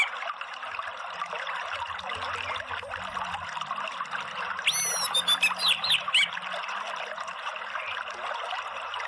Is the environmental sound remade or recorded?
recorded